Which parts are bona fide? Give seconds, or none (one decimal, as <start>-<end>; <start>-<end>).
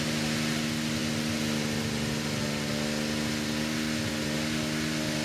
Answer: 0.0-5.2